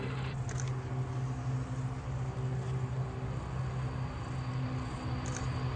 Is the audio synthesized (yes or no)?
no